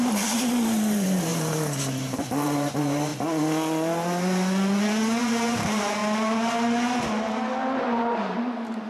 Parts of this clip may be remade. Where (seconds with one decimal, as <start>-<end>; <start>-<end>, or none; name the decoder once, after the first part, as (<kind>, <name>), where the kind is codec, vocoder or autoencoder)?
0.0-3.1 (vocoder, BigVGAN v2); 5.2-6.0; 8.0-8.9